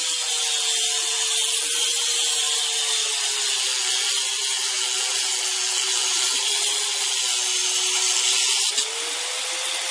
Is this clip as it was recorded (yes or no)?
yes